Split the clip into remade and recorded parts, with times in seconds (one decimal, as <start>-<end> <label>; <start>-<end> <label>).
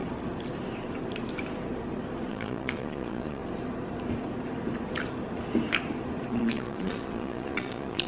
0.0-2.3 recorded; 2.3-3.4 remade; 3.4-6.3 recorded; 6.3-8.1 remade